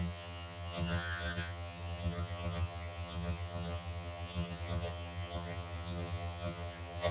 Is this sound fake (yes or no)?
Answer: yes